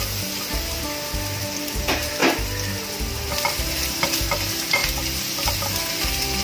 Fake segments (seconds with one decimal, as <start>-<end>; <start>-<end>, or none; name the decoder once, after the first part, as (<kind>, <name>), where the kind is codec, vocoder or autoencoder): 0.0-2.2 (vocoder, BigVGAN v2); 3.5-6.4